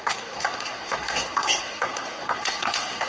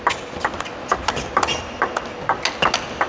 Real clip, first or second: second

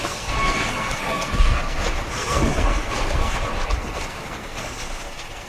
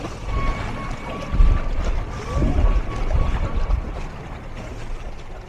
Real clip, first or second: second